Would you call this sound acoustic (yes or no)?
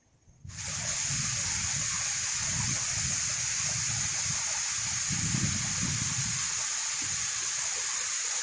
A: yes